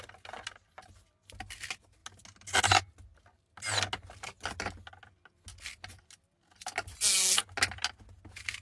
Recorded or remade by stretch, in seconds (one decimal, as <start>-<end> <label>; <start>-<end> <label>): 0.0-8.6 recorded